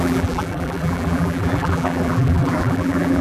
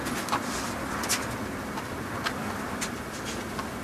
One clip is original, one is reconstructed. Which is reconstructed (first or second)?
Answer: first